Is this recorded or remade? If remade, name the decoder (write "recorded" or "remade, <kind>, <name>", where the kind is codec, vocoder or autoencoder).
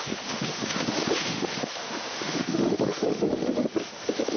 remade, autoencoder, DAC-VAE